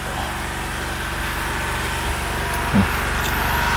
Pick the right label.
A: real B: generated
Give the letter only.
A